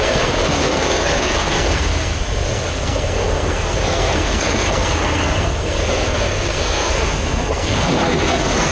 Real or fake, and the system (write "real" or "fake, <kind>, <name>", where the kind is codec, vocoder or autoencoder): fake, codec, SNAC